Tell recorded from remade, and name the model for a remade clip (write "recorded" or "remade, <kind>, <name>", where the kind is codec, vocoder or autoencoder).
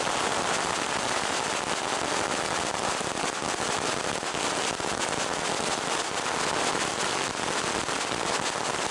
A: recorded